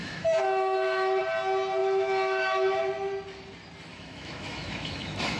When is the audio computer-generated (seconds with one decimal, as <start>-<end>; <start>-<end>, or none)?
0.0-1.2; 1.8-2.8; 3.9-5.4